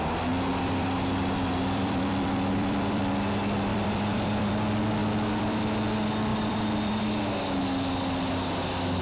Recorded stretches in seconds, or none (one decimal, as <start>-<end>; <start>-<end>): 0.0-0.5; 3.0-3.7; 4.5-5.0; 5.6-6.3; 7.0-9.0